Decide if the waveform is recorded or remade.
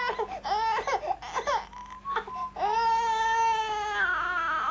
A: recorded